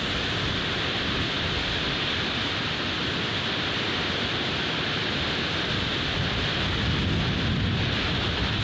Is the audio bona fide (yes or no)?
yes